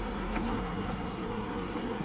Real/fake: fake